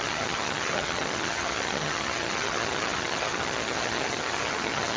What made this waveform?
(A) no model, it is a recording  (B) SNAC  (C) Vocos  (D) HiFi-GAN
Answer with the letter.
D